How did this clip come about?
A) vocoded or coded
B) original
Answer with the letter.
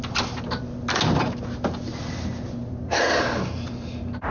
B